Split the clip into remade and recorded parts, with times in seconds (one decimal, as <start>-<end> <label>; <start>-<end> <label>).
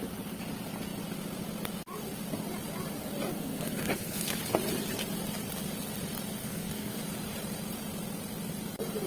0.0-3.3 recorded; 3.3-4.4 remade; 4.4-6.4 recorded; 6.4-7.0 remade; 7.0-9.1 recorded